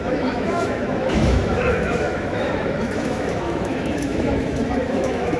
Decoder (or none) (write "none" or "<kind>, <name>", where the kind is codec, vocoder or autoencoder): autoencoder, DAC-VAE